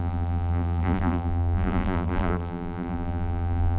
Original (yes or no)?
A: no